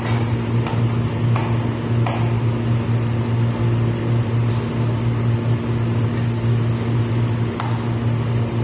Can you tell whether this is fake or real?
real